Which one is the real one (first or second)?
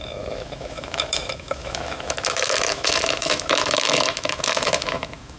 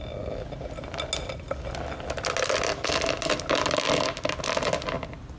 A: second